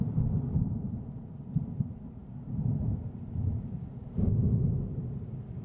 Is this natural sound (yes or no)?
yes